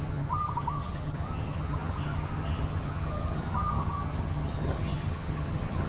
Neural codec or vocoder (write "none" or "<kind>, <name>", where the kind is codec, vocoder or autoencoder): vocoder, HiFi-GAN